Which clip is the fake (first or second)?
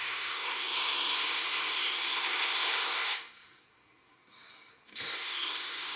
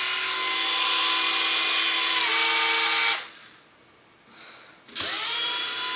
first